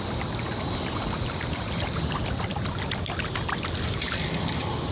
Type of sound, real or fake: real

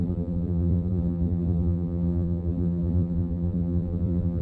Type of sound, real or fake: fake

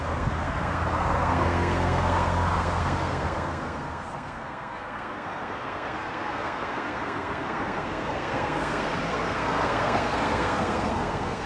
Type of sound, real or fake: fake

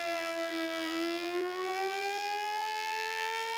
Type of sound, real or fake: fake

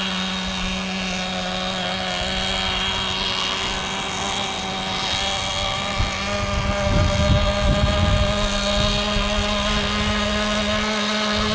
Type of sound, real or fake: real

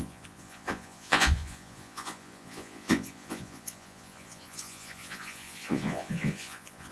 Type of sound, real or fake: fake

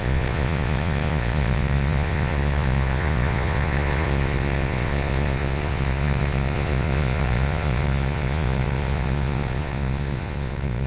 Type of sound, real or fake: fake